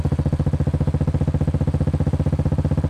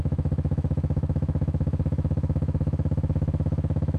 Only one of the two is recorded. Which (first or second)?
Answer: first